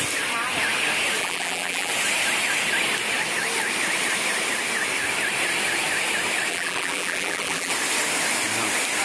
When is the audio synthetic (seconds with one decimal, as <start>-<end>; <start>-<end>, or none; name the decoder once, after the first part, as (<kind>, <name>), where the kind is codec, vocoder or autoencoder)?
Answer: 1.2-1.9 (vocoder, BigVGAN v2); 6.5-7.7